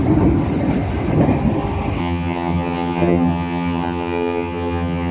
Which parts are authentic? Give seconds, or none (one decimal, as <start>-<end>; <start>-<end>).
0.0-2.0